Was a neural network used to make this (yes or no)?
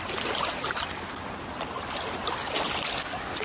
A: no